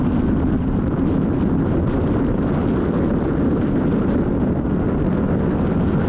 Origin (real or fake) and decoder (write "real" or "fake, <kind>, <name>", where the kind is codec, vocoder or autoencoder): real